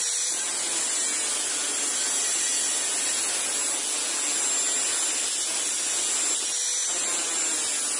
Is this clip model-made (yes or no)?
no